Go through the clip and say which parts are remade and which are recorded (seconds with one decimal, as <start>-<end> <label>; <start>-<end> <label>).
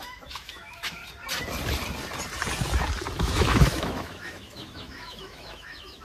0.0-1.0 remade; 1.0-3.2 recorded; 3.2-6.0 remade